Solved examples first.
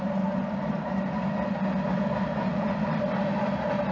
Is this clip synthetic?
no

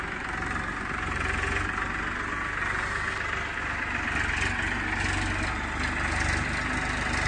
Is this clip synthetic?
no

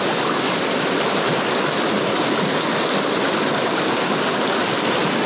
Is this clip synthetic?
no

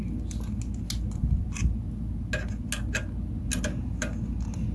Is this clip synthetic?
no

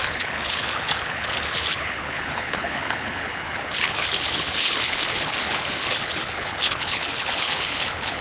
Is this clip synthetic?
yes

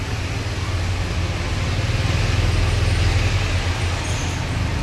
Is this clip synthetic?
no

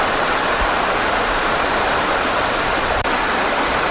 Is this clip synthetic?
no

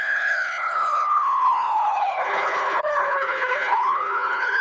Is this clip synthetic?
yes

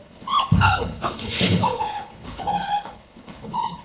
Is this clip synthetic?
yes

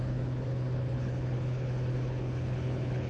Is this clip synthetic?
yes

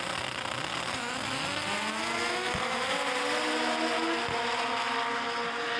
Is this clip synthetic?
no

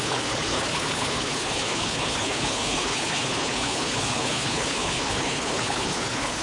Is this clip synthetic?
yes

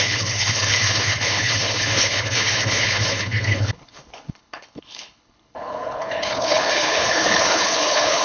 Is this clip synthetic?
yes